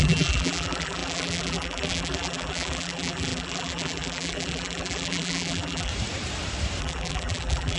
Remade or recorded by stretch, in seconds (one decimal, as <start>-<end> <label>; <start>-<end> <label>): 0.0-5.9 remade; 5.9-6.8 recorded; 6.8-7.8 remade